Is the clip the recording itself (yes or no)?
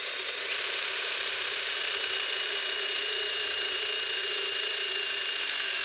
no